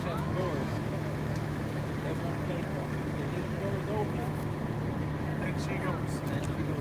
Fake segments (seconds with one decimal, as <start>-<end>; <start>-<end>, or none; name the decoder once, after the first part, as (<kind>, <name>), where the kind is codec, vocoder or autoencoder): 0.0-1.9 (autoencoder, DAC-VAE); 4.0-4.7